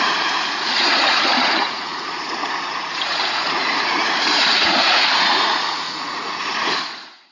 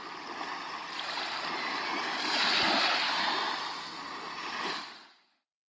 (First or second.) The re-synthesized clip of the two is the first